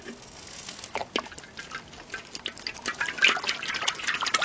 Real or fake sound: real